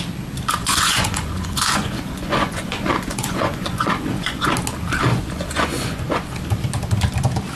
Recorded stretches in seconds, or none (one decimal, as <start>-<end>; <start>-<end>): 0.0-0.6; 4.5-5.1; 6.3-7.6